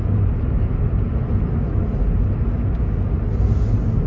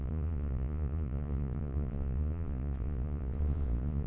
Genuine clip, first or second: first